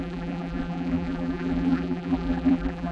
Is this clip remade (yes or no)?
yes